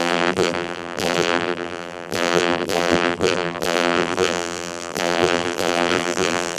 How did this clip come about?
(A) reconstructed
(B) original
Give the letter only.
A